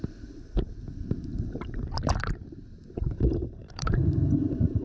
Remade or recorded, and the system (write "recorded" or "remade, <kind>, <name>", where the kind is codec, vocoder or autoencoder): remade, vocoder, BigVGAN v2